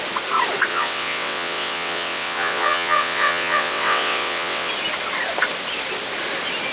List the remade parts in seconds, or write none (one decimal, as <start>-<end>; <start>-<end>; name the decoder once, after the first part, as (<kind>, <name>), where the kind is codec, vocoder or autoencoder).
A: 0.7-4.7 (vocoder, WaveNeXt)